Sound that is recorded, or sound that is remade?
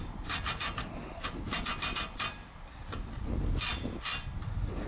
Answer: recorded